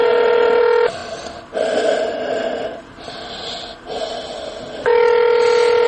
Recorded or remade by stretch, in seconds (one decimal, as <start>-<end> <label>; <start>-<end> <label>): 0.0-3.7 recorded; 3.7-4.3 remade; 4.3-5.9 recorded